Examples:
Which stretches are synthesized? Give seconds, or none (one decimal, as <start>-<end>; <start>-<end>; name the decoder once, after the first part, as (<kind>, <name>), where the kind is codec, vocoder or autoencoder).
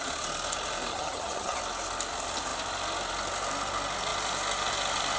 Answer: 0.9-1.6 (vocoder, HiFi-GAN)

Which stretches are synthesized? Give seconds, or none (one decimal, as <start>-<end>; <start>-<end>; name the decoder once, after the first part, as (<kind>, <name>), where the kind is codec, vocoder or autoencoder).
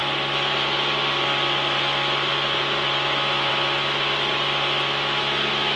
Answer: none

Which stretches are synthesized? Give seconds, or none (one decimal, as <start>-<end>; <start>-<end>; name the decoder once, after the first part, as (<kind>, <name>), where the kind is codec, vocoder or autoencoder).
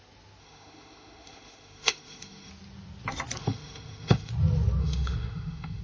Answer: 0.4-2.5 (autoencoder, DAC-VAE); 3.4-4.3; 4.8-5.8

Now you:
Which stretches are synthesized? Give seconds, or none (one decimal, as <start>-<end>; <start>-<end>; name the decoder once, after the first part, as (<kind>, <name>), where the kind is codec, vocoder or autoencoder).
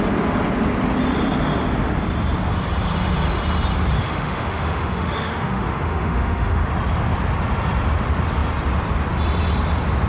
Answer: 4.0-6.7 (autoencoder, DAC-VAE)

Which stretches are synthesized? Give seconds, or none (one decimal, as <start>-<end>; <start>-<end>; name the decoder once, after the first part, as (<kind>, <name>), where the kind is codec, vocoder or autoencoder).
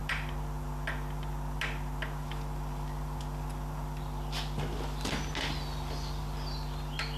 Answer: none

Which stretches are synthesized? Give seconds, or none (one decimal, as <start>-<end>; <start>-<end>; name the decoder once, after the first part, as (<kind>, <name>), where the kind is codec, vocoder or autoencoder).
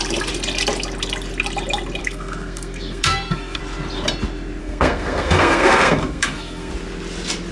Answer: 2.0-3.6 (codec, SNAC); 4.6-6.7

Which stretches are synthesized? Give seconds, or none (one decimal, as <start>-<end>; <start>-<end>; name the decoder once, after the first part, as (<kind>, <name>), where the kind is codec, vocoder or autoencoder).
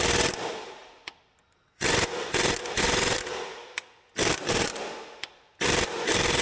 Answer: none